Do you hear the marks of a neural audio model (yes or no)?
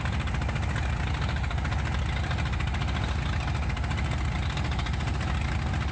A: no